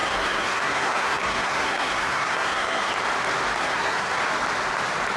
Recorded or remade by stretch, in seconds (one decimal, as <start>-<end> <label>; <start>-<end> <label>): 0.0-2.9 remade; 2.9-3.6 recorded; 3.6-4.2 remade; 4.2-5.2 recorded